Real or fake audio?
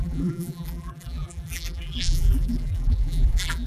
fake